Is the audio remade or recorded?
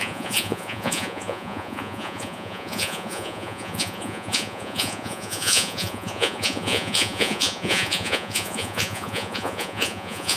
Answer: remade